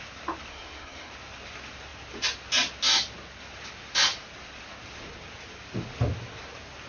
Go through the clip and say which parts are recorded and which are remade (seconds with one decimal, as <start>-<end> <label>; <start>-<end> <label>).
0.0-0.5 recorded; 0.5-1.1 remade; 1.1-6.9 recorded